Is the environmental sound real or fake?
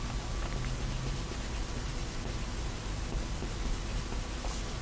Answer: real